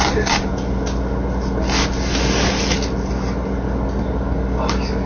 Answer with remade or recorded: recorded